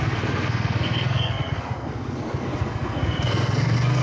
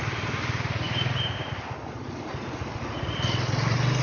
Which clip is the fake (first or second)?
first